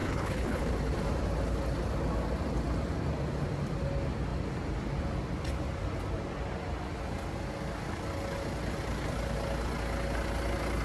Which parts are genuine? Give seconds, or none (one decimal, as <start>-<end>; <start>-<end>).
0.7-10.8